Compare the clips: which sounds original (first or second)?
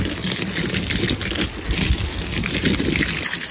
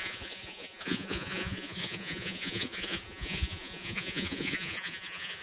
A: first